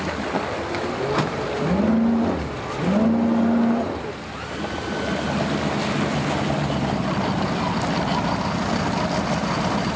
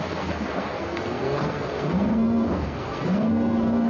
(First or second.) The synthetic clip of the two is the second